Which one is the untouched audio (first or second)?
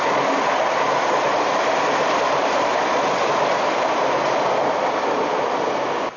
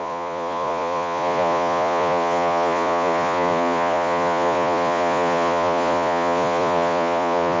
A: first